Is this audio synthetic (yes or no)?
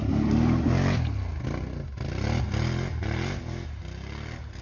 no